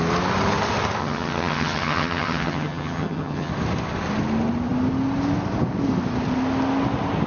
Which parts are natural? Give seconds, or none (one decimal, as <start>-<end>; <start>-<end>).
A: 0.0-1.0; 3.5-7.3